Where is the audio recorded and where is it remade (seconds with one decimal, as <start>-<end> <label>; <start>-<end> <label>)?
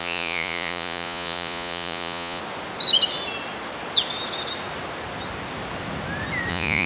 0.0-2.4 remade; 2.4-6.5 recorded; 6.5-6.9 remade